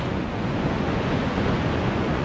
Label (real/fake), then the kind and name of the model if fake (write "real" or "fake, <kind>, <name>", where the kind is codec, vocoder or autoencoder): fake, vocoder, Vocos